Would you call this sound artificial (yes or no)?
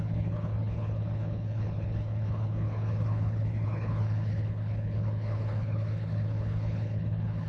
yes